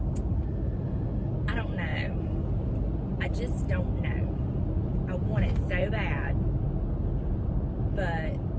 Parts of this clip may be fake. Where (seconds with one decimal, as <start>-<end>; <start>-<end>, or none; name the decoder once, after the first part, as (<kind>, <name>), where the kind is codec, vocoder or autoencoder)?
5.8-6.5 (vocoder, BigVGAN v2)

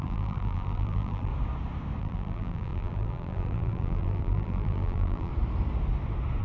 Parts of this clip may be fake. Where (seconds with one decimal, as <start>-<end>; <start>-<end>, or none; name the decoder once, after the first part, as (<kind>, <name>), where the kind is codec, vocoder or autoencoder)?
0.0-1.3 (vocoder, BigVGAN v2); 2.0-5.3

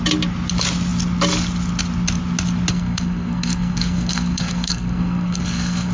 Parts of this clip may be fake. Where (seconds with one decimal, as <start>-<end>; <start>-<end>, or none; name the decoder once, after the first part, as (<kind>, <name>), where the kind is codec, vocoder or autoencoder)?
2.7-5.9 (codec, SNAC)